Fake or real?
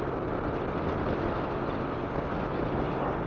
real